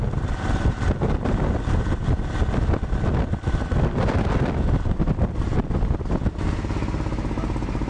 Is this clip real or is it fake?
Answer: real